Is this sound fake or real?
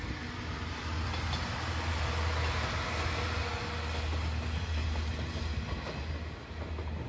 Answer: real